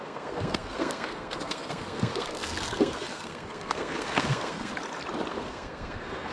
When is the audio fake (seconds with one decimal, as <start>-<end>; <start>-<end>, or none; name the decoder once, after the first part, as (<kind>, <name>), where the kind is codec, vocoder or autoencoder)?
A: 0.0-4.7 (codec, SNAC); 5.3-6.3